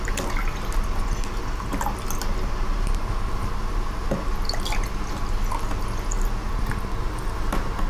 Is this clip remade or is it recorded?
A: recorded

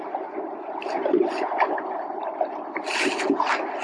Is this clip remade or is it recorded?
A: recorded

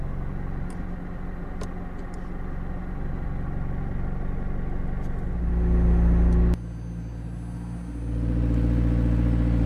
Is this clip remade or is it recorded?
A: recorded